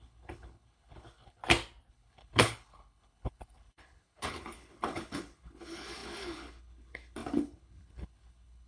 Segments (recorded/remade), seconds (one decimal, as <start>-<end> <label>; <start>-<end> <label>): 0.0-1.4 remade; 1.4-1.9 recorded; 1.9-8.7 remade